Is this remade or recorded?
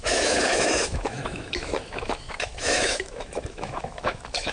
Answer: remade